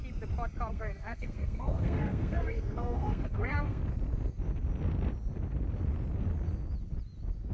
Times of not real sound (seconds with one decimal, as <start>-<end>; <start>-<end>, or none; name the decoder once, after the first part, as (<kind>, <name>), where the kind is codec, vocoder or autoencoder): 0.7-3.8 (codec, SNAC)